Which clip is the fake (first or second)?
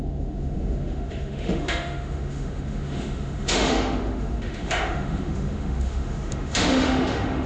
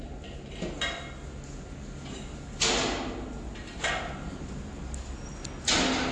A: first